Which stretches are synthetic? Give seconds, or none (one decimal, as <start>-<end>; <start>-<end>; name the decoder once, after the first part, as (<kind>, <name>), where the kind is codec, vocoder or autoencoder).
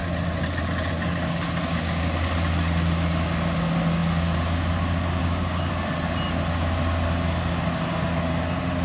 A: 5.2-5.7 (codec, DAC)